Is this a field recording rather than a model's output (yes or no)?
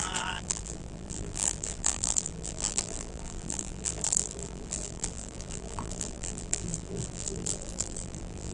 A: no